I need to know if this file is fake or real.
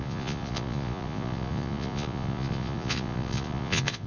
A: fake